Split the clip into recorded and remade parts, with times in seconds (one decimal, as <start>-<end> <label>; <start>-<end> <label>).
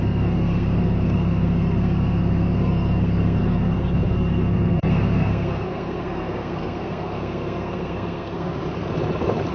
0.0-8.6 remade; 8.6-9.5 recorded